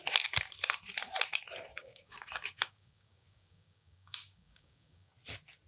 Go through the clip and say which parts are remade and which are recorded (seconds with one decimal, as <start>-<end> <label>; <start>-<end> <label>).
0.0-1.7 recorded; 1.7-5.1 remade; 5.1-5.7 recorded